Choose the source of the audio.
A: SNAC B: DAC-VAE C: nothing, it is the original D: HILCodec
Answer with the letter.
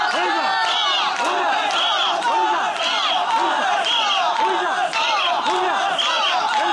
C